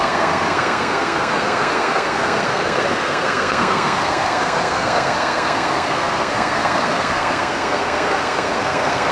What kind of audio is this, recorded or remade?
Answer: remade